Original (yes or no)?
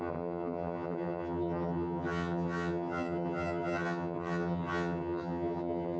no